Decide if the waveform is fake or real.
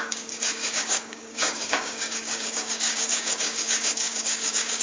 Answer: fake